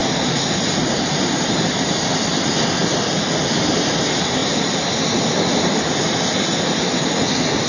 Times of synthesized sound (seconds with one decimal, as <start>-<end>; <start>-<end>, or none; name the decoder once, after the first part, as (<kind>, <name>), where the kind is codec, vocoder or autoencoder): 0.0-2.0 (vocoder, BigVGAN v2); 4.4-5.0